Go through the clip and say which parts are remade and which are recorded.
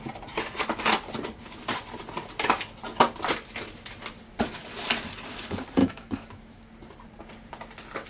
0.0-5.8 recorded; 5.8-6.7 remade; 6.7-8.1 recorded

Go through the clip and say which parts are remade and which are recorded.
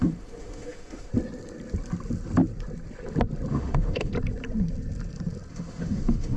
0.0-1.1 remade; 1.1-3.5 recorded; 3.5-4.1 remade; 4.1-5.5 recorded; 5.5-6.4 remade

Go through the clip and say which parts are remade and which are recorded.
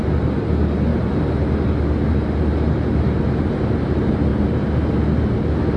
0.0-5.8 recorded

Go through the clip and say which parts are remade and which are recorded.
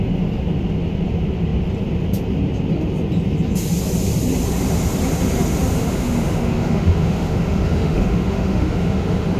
0.0-5.7 recorded; 5.7-9.4 remade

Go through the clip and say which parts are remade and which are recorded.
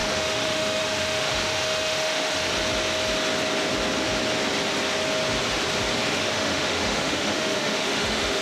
0.0-2.5 remade; 2.5-6.1 recorded; 6.1-8.4 remade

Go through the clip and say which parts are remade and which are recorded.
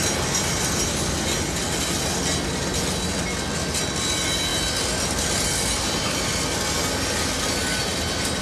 0.0-8.4 recorded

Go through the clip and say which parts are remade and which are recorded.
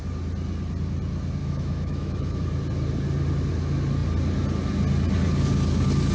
0.0-1.4 recorded; 1.4-2.4 remade; 2.4-6.1 recorded